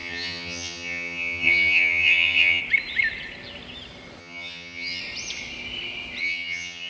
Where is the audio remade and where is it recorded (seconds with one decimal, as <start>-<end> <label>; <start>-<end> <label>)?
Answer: 0.0-2.6 remade; 2.6-4.2 recorded; 4.2-5.0 remade; 5.0-6.2 recorded; 6.2-6.9 remade